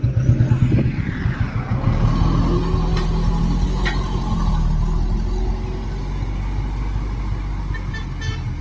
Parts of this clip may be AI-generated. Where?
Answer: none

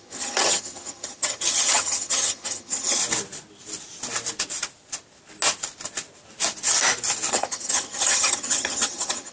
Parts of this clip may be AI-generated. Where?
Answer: 0.0-3.0 (vocoder, HiFi-GAN); 7.3-9.3